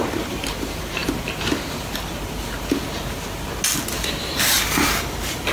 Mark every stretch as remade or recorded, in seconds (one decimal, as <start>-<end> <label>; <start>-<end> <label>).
0.0-1.0 remade; 1.0-4.3 recorded; 4.3-5.5 remade